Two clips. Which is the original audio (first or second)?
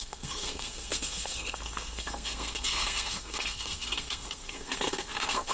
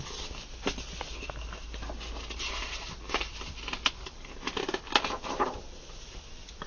second